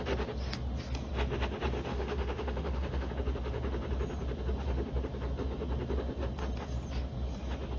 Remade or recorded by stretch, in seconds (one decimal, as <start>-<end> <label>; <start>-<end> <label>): 0.0-1.9 recorded; 1.9-3.1 remade; 3.1-7.8 recorded